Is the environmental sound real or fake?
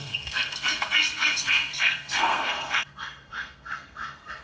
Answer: fake